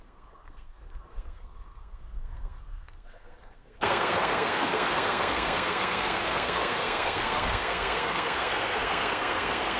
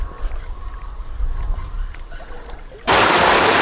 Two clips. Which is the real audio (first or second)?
second